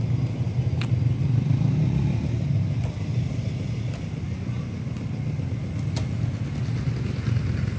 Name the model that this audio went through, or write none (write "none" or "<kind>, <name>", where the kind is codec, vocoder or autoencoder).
none